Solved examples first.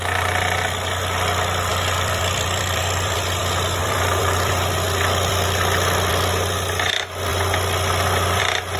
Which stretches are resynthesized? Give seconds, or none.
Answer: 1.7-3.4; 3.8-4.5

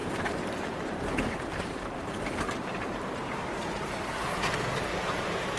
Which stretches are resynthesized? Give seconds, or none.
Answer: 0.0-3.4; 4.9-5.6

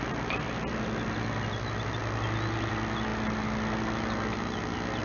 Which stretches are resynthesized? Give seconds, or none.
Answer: none